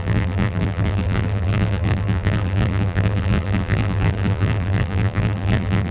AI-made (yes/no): yes